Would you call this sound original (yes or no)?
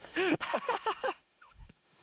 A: no